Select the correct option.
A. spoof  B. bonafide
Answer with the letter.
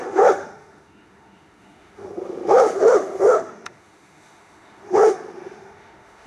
A